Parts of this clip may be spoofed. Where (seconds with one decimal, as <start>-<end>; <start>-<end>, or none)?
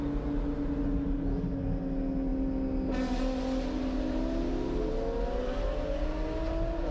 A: none